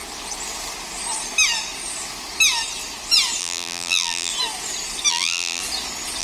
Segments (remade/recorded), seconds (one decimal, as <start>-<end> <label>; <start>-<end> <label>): 0.0-3.4 recorded; 3.4-4.3 remade; 4.3-5.1 recorded; 5.1-5.6 remade; 5.6-6.2 recorded